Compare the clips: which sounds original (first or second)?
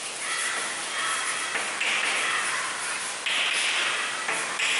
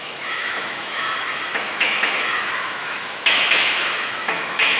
first